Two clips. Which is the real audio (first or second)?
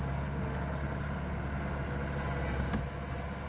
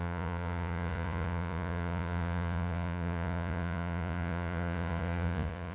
first